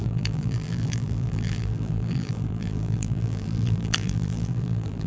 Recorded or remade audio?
remade